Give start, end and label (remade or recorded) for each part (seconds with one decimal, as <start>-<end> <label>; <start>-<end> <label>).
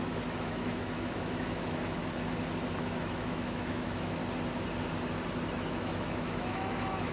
0.0-2.0 remade; 2.0-2.8 recorded; 2.8-4.2 remade; 4.2-5.5 recorded; 5.5-7.1 remade